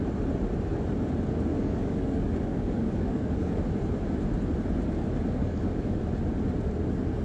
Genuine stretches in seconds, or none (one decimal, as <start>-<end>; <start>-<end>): 0.0-1.5; 3.6-5.4; 6.0-7.2